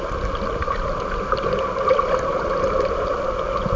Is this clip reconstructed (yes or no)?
no